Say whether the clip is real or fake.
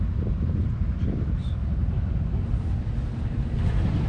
fake